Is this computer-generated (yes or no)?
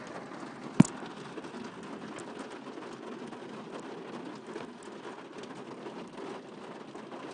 no